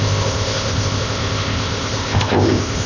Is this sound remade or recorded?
remade